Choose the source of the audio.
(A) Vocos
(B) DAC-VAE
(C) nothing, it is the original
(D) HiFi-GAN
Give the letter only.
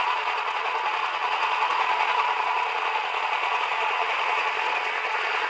A